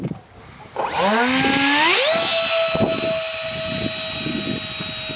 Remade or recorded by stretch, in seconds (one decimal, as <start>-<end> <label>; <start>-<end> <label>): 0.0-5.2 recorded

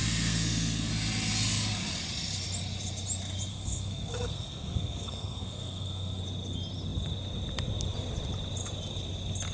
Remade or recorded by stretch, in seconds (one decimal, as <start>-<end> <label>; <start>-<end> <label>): 0.0-0.9 remade; 0.9-3.5 recorded; 3.5-6.2 remade; 6.2-9.5 recorded

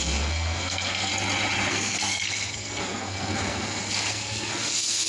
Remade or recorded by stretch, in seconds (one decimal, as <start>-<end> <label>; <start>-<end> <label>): 0.0-1.1 remade; 1.1-1.7 recorded; 1.7-5.1 remade